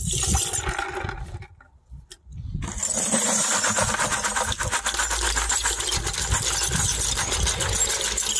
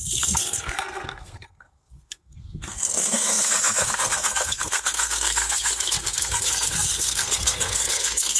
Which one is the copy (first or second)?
second